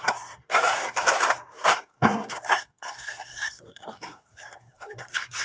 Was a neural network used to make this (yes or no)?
yes